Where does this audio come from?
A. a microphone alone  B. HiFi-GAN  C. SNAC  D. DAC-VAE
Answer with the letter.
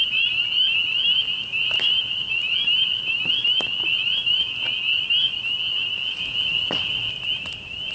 A